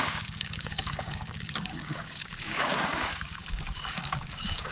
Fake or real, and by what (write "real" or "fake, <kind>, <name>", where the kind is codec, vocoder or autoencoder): fake, codec, DAC